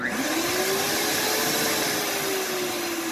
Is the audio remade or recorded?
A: recorded